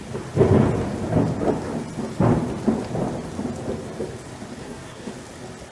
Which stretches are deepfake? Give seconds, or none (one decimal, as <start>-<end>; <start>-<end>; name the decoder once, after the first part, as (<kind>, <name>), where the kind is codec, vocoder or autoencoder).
4.6-5.1 (codec, SNAC)